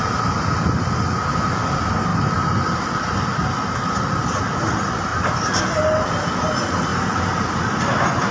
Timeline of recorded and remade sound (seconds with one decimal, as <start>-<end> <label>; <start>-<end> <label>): 0.0-5.1 recorded; 5.1-5.6 remade; 5.6-6.9 recorded; 6.9-7.6 remade; 7.6-8.3 recorded